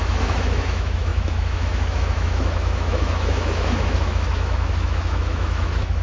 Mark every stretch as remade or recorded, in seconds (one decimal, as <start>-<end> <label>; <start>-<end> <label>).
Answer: 0.0-6.0 remade